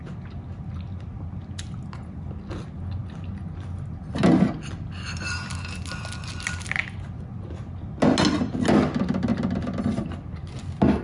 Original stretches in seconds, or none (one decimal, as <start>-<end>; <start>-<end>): 0.0-11.0

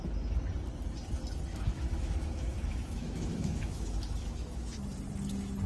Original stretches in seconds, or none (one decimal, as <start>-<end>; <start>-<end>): 0.0-1.5; 4.8-5.7

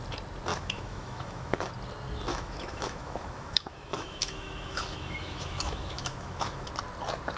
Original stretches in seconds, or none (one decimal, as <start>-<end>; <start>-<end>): 0.0-0.5; 1.7-2.3; 6.7-7.4